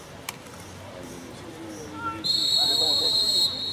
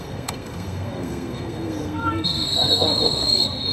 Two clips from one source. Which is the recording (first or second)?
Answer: first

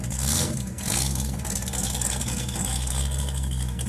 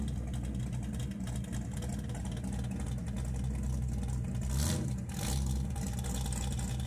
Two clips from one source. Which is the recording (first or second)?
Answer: second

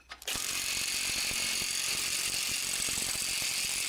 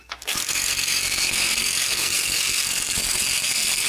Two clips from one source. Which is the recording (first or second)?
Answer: first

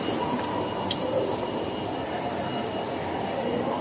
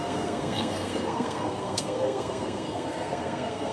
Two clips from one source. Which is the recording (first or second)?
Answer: first